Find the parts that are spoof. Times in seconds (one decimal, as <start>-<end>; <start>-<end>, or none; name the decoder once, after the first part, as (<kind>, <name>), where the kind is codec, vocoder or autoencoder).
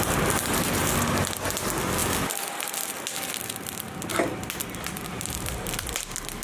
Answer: none